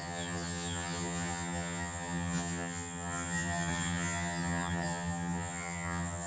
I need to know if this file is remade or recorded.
remade